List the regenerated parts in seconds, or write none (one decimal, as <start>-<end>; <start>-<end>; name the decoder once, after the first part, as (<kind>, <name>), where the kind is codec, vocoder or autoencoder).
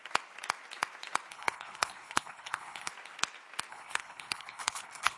1.3-2.9 (codec, HILCodec); 3.7-5.2